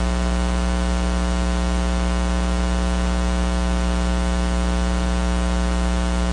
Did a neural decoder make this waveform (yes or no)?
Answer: no